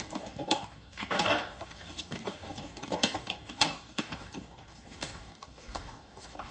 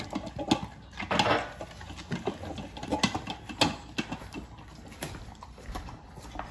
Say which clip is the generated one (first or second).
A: first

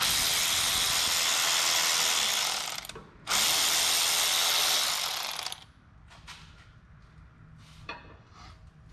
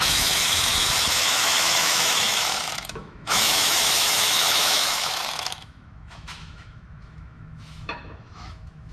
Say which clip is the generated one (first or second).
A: second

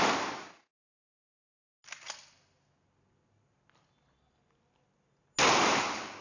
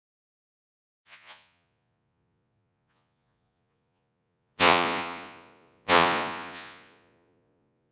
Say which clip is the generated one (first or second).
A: second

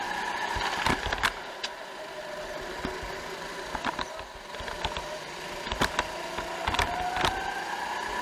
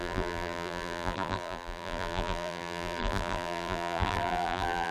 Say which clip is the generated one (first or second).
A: second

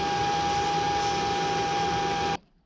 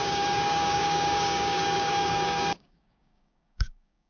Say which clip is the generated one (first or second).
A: second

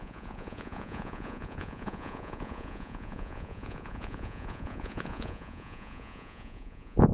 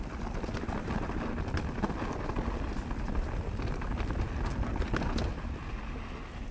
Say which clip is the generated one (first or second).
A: first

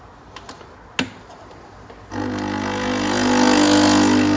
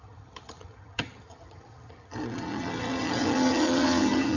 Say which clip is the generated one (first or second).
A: second